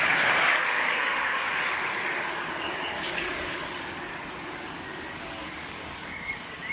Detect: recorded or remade remade